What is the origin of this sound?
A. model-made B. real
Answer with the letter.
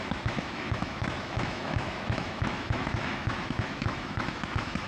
A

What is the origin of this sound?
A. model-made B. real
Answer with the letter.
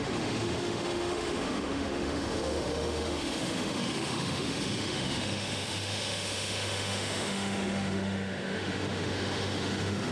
A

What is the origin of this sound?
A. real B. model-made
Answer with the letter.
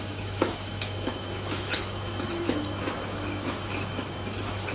B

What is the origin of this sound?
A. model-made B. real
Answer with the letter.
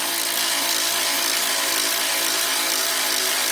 B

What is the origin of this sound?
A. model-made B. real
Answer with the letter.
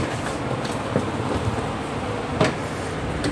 B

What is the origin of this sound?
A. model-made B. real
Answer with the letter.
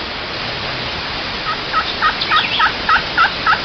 B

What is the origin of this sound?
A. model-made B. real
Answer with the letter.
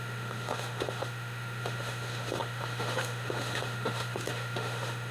A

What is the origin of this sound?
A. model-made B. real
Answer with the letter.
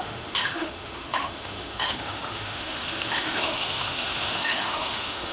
A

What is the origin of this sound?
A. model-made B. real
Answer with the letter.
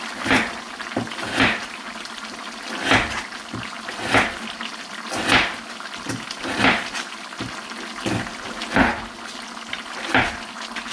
B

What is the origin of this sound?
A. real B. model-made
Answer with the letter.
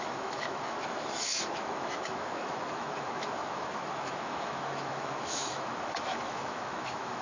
B